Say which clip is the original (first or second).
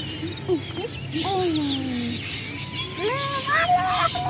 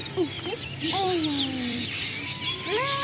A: first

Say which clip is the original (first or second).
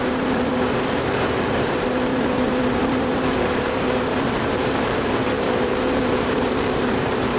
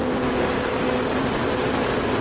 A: second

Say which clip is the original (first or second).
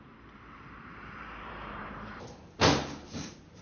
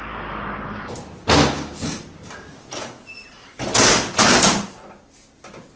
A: second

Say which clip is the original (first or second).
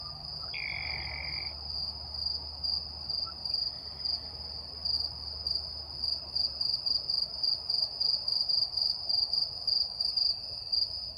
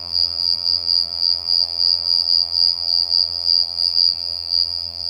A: first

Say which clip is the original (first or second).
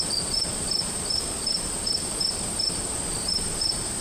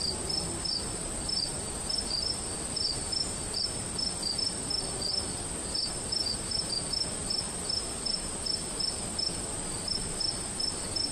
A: second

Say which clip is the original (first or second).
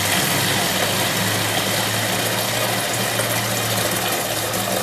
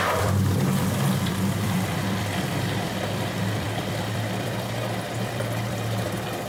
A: first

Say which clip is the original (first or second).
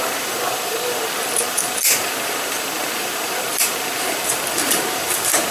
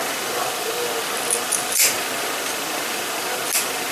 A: second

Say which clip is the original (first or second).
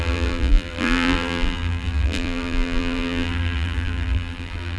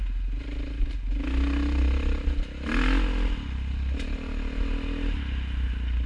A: second